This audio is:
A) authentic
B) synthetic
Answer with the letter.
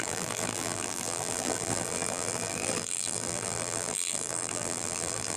B